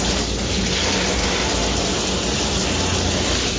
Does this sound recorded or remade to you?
recorded